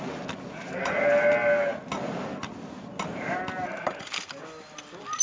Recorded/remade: recorded